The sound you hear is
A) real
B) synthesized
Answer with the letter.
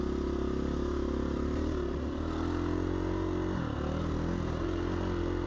A